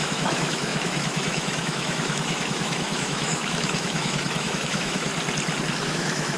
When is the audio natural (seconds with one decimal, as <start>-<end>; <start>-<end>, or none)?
5.1-5.8